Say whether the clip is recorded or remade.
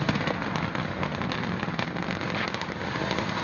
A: recorded